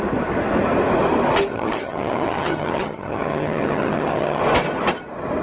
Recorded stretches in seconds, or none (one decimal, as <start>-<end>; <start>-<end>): 0.0-1.5; 4.4-5.4